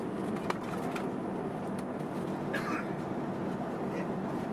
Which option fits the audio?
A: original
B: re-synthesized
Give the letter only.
A